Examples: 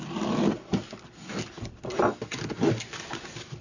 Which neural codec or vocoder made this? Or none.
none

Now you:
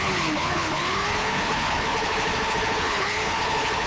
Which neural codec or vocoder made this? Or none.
codec, HILCodec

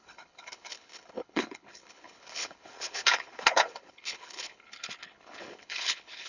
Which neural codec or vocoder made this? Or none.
codec, HILCodec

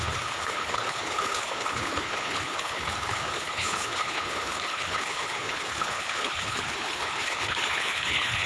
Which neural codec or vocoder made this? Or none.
codec, HILCodec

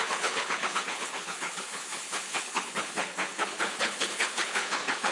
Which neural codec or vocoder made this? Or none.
codec, HILCodec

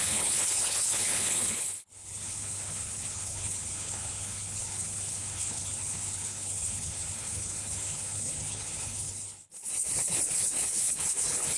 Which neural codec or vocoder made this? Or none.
codec, HILCodec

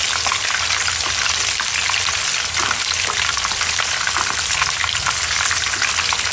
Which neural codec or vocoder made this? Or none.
none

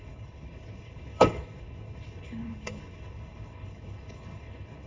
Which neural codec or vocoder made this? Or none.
codec, HILCodec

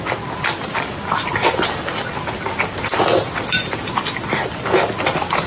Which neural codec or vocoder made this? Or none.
none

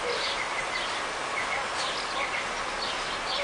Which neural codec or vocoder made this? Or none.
none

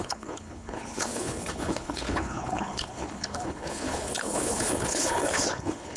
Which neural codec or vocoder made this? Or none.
codec, HILCodec